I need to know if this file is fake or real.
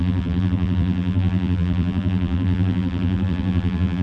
fake